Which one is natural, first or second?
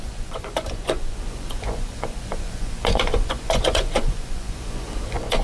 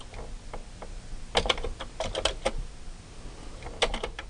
second